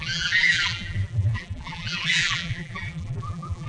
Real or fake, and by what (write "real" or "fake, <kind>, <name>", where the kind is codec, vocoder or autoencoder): fake, vocoder, BigVGAN v2